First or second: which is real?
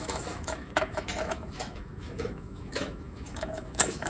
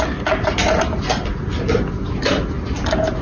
second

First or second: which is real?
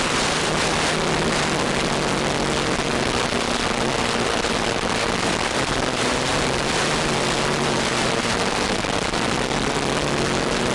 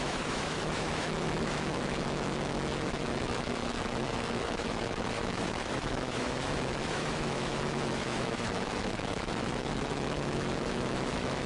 first